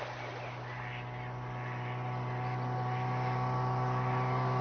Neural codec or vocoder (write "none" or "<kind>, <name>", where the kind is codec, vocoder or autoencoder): none